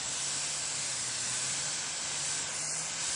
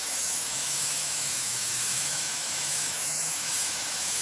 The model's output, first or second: second